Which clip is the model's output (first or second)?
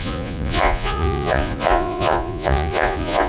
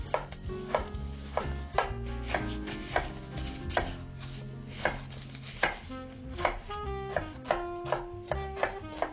first